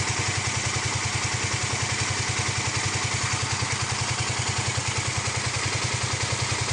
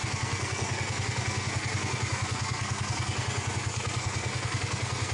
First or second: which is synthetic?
second